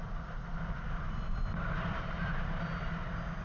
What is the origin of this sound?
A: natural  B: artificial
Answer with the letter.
A